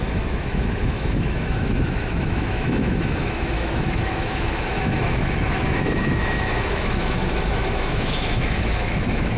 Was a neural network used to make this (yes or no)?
yes